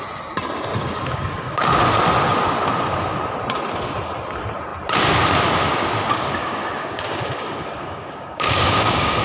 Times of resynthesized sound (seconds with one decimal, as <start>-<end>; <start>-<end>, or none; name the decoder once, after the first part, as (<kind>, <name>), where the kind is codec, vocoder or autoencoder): 0.7-1.7 (codec, DAC); 6.1-9.2